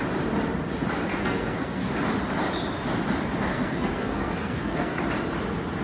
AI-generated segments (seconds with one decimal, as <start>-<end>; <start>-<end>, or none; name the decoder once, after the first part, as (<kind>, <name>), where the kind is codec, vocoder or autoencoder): 1.1-1.9 (codec, SNAC); 3.5-5.0